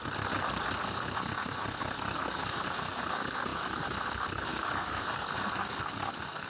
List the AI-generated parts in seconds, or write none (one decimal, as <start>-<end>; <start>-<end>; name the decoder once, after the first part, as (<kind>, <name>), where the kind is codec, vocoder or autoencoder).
0.8-6.5 (codec, SNAC)